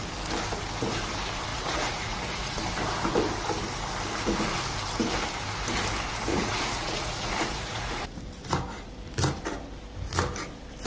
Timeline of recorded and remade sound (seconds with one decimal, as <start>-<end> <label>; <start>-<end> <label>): 0.0-1.5 recorded; 1.5-2.6 remade; 2.6-6.3 recorded; 6.3-8.2 remade; 8.2-10.9 recorded